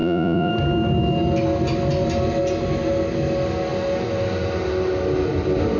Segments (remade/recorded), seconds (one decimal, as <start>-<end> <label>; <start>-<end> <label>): 0.0-0.5 remade; 0.5-5.8 recorded